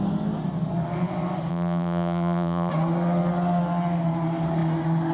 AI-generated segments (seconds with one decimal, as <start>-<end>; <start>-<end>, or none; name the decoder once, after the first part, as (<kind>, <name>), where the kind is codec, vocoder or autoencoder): 1.5-2.7 (vocoder, BigVGAN v2)